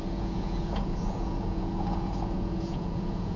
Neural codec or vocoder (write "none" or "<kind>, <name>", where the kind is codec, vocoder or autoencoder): vocoder, Vocos